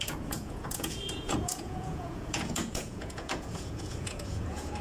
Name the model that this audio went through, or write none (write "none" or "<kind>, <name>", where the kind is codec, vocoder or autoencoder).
vocoder, Vocos